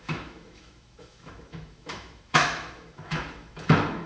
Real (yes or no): no